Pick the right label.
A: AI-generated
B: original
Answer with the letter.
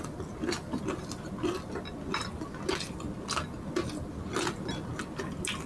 B